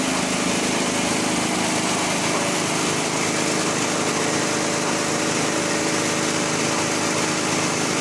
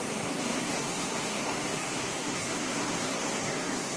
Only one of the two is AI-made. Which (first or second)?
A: second